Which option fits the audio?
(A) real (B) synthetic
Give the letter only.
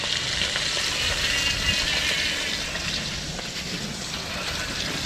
A